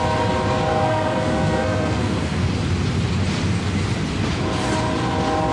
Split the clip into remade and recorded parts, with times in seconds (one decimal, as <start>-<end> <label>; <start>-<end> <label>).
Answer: 0.0-0.7 recorded; 0.7-2.5 remade; 2.5-5.5 recorded